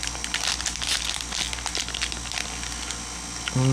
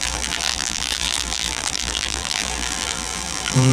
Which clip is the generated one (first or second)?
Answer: second